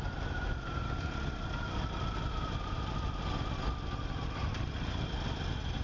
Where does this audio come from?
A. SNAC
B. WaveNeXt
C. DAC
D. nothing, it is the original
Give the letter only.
D